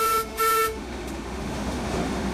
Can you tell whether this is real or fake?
fake